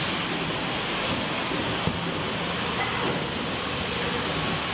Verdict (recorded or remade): recorded